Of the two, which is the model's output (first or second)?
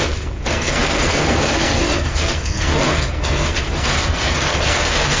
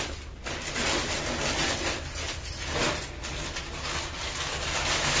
first